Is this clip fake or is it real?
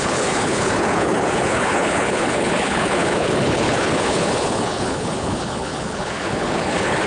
fake